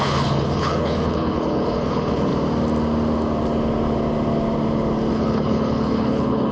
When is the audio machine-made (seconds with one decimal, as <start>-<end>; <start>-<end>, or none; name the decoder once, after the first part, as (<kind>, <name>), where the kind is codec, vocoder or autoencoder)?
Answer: 0.0-2.3 (codec, HILCodec); 5.1-6.5